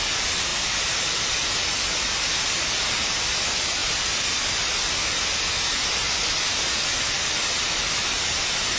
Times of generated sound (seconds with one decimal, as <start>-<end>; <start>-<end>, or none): none